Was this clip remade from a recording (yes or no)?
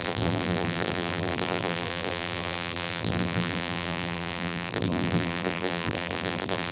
yes